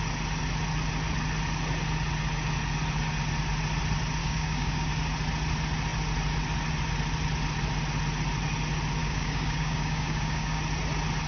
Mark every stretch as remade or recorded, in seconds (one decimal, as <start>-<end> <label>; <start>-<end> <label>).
0.0-4.2 recorded; 4.2-4.9 remade; 4.9-9.0 recorded; 9.0-10.6 remade; 10.6-11.3 recorded